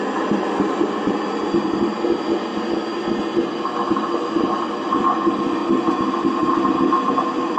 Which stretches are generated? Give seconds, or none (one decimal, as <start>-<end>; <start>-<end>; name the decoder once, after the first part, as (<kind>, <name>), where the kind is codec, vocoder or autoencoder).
none